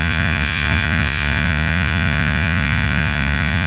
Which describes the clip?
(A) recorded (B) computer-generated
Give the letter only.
B